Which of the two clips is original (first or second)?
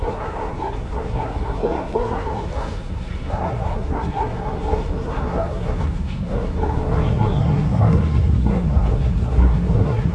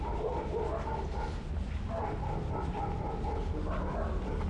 second